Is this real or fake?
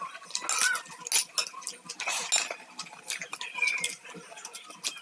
real